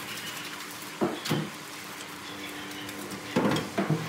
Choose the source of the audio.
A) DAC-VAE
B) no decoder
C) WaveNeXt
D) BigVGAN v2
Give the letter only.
B